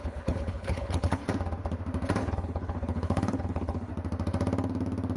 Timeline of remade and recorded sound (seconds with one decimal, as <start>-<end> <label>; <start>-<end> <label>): 0.0-1.2 remade; 1.2-2.2 recorded; 2.2-3.9 remade; 3.9-5.2 recorded